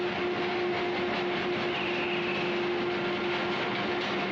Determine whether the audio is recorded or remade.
recorded